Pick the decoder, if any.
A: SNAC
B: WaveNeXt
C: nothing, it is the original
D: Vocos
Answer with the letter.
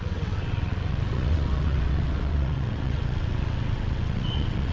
B